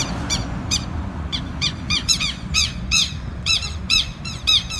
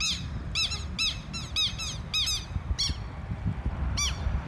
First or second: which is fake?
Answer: first